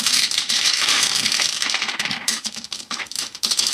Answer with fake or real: fake